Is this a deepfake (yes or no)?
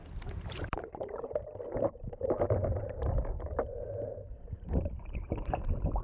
yes